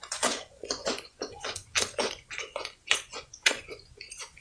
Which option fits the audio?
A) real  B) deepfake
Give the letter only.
B